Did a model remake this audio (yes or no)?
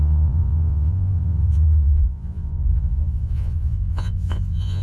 yes